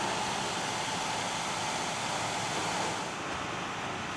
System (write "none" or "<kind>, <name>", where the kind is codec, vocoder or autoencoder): none